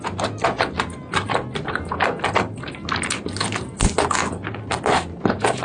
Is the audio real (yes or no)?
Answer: yes